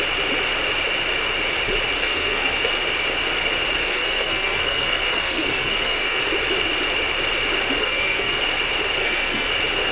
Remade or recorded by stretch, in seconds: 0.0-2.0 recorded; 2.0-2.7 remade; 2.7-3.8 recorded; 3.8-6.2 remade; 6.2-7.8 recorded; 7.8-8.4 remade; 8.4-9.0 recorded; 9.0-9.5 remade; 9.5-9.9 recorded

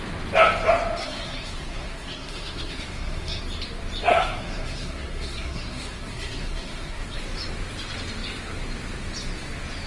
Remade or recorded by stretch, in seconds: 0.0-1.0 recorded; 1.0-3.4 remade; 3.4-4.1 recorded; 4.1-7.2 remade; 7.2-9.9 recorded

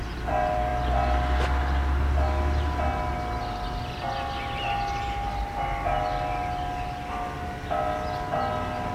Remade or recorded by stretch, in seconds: 0.0-8.9 recorded

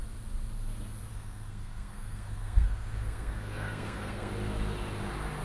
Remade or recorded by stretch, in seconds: 0.0-1.1 recorded; 1.1-4.3 remade; 4.3-5.4 recorded

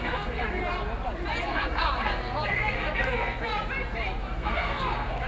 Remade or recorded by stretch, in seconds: 0.0-0.6 remade; 0.6-1.4 recorded; 1.4-3.5 remade; 3.5-4.2 recorded; 4.2-5.3 remade